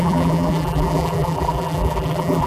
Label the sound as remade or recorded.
remade